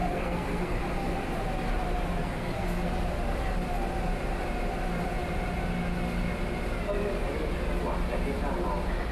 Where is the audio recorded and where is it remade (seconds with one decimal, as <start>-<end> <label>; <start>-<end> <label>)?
0.0-0.8 remade; 0.8-2.2 recorded; 2.2-2.9 remade; 2.9-9.1 recorded